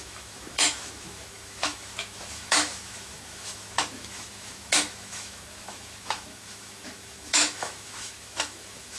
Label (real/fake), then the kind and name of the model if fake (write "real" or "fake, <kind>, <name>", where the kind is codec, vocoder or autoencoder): fake, autoencoder, DAC-VAE